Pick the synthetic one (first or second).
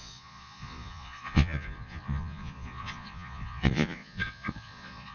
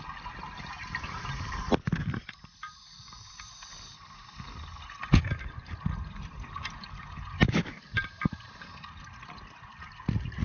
first